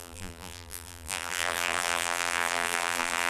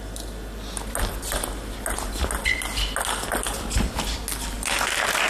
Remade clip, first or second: first